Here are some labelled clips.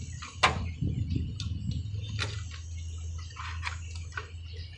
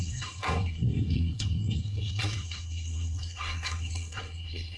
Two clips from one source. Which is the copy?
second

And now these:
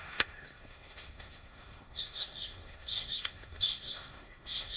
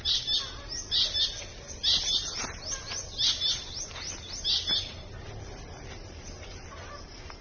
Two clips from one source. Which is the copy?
first